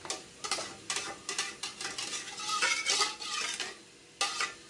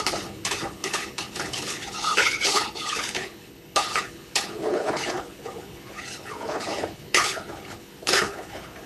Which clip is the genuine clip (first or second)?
first